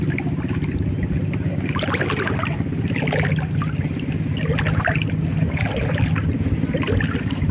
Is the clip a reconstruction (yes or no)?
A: no